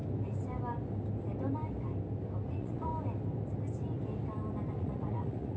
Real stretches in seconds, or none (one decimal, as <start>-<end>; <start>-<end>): 0.0-2.5; 2.9-4.7